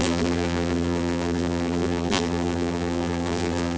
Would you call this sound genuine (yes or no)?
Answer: no